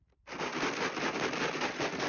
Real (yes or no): yes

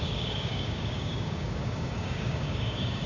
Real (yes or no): no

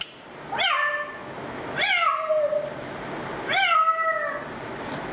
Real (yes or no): yes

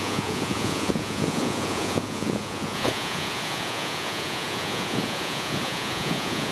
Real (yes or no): no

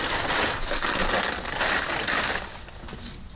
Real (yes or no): yes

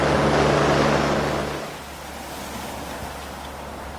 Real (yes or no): yes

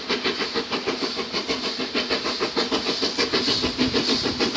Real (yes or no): yes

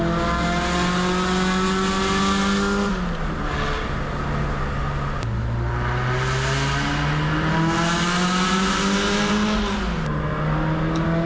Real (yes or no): yes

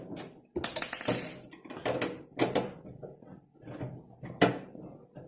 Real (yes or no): yes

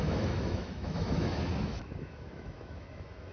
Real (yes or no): no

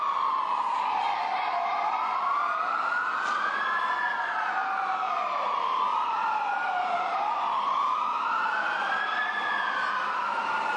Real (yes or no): yes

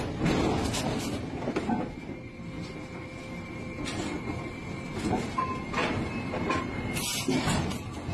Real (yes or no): yes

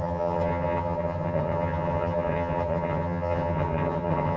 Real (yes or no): no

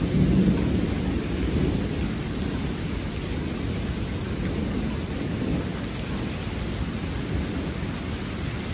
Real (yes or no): yes